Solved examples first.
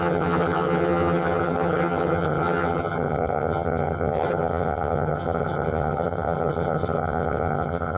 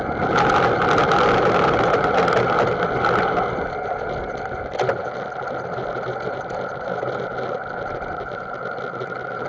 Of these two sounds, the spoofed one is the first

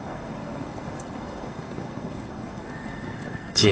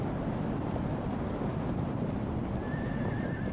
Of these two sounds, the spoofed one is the first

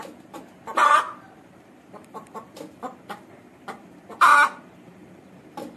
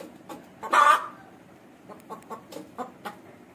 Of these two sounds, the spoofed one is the first